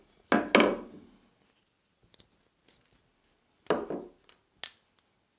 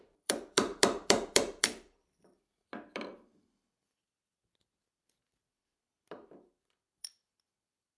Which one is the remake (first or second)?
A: second